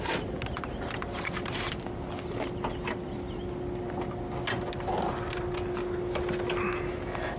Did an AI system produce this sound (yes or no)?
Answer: no